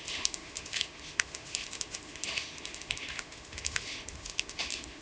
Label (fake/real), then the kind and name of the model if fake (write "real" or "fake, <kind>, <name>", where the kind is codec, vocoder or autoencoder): fake, autoencoder, DAC-VAE